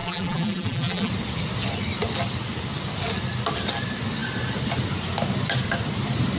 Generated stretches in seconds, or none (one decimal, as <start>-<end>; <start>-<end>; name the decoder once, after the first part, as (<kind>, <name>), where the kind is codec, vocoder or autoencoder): 0.0-1.1 (vocoder, BigVGAN v2)